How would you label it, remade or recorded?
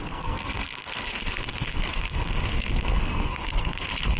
remade